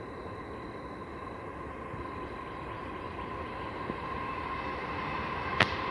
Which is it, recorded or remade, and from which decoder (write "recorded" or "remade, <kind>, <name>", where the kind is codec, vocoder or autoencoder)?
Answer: recorded